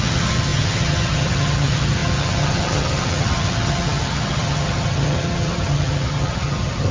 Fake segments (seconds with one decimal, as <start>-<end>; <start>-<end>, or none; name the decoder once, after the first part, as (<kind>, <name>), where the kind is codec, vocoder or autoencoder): 0.0-6.9 (vocoder, HiFi-GAN)